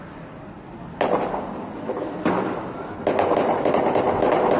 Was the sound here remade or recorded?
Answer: recorded